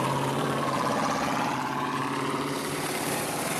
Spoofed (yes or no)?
yes